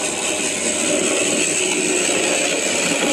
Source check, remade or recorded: recorded